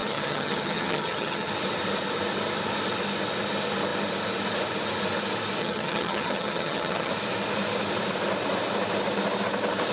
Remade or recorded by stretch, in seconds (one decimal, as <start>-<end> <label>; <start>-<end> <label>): 0.0-1.5 remade; 1.5-5.6 recorded; 5.6-7.1 remade; 7.1-9.9 recorded